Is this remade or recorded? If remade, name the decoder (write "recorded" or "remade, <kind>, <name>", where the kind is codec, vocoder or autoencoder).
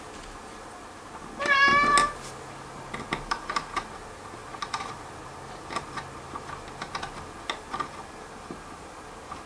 recorded